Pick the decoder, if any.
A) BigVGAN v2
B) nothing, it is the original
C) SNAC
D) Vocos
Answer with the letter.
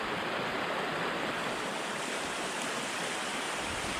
B